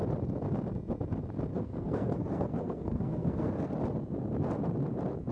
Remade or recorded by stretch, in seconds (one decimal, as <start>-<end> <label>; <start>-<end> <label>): 0.0-1.5 recorded; 1.5-3.7 remade; 3.7-5.3 recorded